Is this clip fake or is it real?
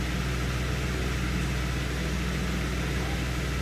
real